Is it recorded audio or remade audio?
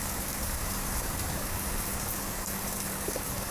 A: remade